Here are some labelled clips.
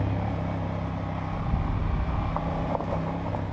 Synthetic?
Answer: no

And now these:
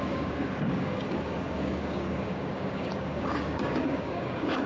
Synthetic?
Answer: yes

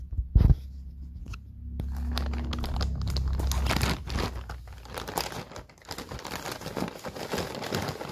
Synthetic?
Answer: no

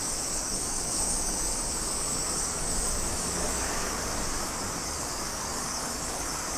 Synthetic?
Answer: yes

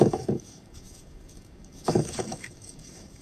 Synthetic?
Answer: yes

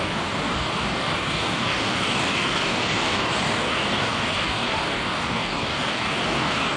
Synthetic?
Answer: yes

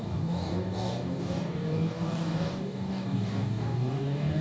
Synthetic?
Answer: yes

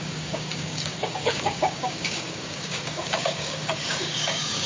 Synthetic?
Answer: yes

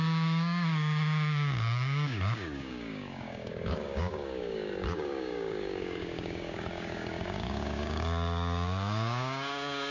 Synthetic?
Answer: yes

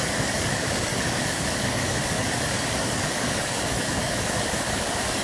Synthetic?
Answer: yes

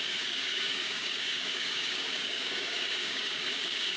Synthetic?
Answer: yes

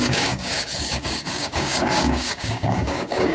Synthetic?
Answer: yes